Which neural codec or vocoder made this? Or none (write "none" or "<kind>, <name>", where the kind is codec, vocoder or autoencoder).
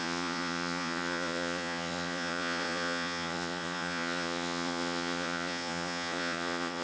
vocoder, Vocos